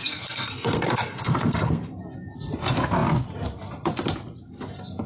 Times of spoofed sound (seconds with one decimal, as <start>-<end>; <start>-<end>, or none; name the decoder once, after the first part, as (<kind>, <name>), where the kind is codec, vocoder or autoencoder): 0.0-1.9 (codec, SNAC)